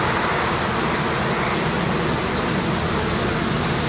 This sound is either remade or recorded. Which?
recorded